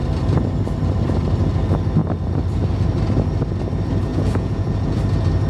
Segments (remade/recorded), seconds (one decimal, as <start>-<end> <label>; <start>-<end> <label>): 0.0-4.1 recorded; 4.1-5.0 remade; 5.0-5.5 recorded